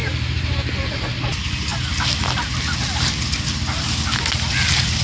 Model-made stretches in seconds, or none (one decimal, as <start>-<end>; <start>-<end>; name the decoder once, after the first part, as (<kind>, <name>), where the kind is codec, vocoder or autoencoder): none